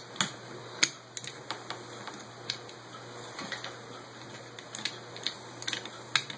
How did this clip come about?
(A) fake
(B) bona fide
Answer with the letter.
B